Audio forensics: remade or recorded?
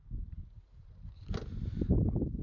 recorded